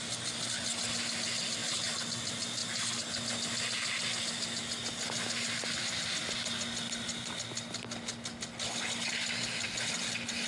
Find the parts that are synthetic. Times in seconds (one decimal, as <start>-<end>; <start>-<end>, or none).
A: none